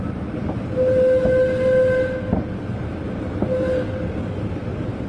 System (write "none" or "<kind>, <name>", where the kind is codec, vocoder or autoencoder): none